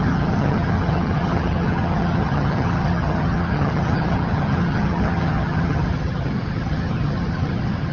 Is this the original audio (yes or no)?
no